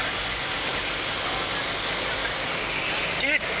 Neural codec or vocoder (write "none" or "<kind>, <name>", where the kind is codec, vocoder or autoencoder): none